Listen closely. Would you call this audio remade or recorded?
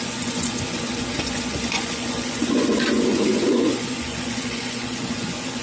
remade